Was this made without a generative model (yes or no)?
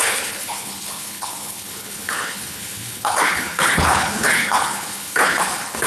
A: no